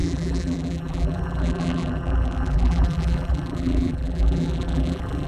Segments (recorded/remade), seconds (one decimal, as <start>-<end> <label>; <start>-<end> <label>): 0.0-5.3 remade